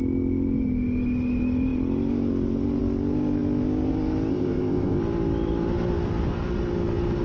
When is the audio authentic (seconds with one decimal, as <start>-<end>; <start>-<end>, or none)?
0.0-4.3; 5.0-7.2